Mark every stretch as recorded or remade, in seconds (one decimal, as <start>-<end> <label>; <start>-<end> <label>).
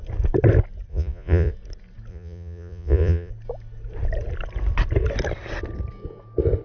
0.0-0.9 recorded; 0.9-1.5 remade; 1.5-2.1 recorded; 2.1-3.3 remade; 3.3-6.6 recorded